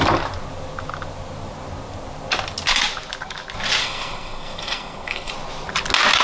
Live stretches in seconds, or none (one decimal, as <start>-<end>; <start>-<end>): 0.0-3.8; 5.3-6.2